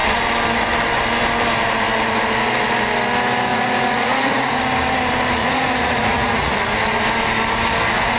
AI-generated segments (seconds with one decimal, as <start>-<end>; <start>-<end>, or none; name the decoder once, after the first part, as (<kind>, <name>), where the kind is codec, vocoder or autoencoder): 3.5-4.6 (vocoder, Vocos); 5.4-6.5